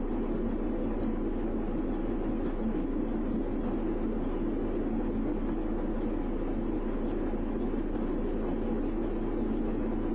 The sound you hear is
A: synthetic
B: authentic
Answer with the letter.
B